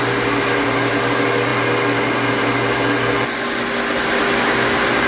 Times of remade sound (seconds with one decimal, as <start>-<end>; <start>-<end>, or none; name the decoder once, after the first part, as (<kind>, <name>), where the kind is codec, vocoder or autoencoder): none